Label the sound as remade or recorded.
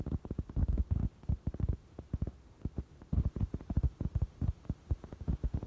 remade